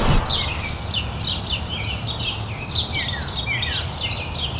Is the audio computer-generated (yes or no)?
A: no